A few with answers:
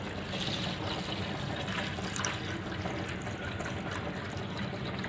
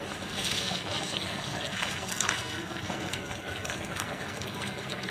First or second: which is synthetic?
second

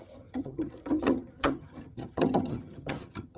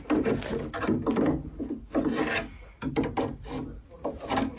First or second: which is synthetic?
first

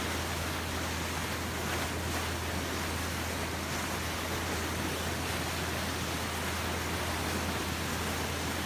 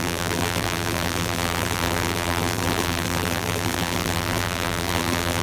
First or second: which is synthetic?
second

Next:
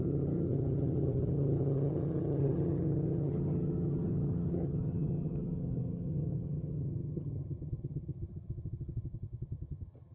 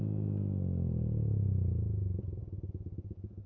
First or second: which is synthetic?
first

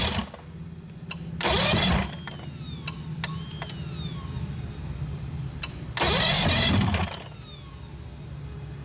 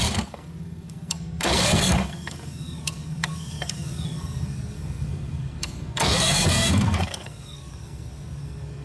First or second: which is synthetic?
second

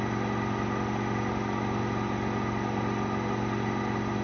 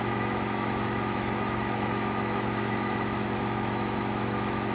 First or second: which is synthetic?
second